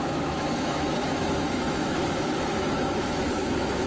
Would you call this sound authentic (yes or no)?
no